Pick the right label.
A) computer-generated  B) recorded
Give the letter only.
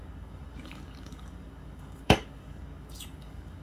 A